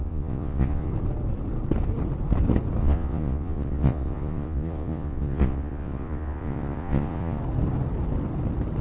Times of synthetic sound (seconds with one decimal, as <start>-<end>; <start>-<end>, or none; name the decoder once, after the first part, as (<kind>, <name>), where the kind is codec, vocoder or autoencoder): 0.0-0.9 (vocoder, Vocos); 2.8-7.4